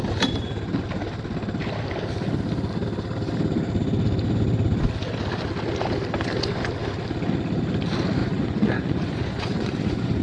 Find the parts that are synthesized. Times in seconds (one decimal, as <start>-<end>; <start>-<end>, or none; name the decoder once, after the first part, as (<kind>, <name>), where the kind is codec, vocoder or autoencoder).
8.2-10.2 (vocoder, Vocos)

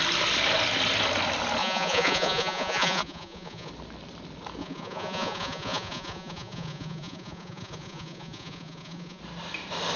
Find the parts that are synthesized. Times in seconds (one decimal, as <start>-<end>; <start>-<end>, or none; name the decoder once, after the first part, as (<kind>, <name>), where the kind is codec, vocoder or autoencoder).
1.6-3.7 (vocoder, Vocos); 4.6-9.2

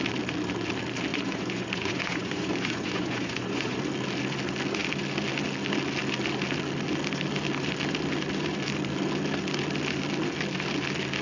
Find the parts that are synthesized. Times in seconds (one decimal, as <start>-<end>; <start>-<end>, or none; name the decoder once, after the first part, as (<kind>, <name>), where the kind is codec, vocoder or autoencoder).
1.1-3.8 (vocoder, Vocos)

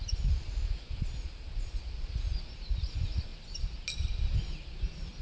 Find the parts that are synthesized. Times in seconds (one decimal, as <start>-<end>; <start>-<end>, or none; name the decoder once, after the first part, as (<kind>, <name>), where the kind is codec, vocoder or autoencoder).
2.7-3.3 (vocoder, Vocos)

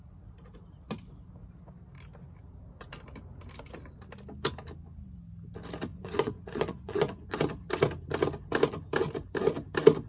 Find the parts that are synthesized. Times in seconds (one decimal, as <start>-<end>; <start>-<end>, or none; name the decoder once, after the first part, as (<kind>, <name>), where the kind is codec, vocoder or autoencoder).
5.9-7.4 (vocoder, Vocos)

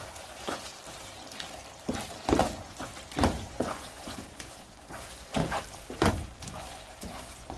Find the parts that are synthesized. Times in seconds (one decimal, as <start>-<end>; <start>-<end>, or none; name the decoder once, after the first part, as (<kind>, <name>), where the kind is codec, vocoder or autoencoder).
0.0-0.7 (vocoder, Vocos); 2.4-2.9; 3.4-5.4; 6.1-7.6

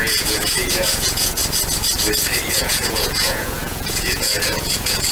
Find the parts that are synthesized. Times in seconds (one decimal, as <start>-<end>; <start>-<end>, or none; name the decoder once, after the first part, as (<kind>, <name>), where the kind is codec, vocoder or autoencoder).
0.0-1.4 (vocoder, Vocos); 2.5-5.1

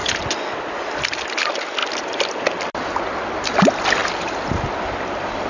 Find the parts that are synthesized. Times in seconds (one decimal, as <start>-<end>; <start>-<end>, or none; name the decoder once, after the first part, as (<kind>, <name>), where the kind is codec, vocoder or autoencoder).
none